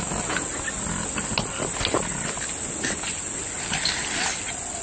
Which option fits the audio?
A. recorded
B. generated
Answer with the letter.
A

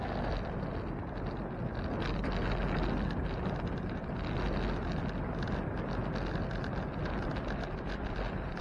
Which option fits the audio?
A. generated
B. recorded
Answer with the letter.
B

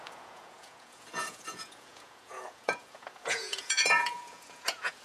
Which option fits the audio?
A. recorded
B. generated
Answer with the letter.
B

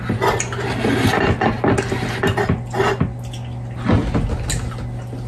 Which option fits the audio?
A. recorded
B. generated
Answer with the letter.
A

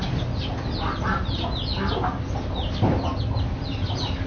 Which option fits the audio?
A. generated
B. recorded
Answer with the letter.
B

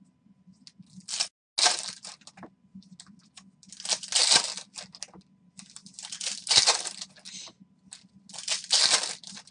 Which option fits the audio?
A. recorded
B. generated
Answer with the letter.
A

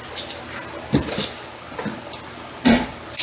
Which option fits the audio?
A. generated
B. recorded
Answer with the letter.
B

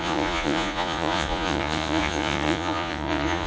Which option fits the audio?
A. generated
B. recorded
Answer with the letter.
A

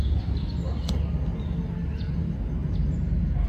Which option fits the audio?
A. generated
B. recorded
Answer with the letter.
B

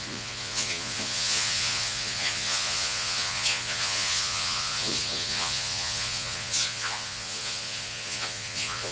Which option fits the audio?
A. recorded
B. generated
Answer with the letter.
B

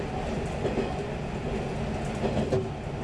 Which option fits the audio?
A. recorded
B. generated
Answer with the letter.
A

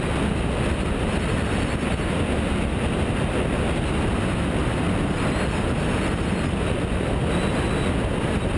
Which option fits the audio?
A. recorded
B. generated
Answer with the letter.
A